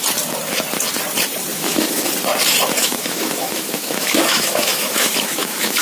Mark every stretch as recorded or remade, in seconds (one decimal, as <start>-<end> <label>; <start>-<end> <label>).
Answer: 0.0-1.5 recorded; 1.5-2.1 remade; 2.1-2.8 recorded; 2.8-5.8 remade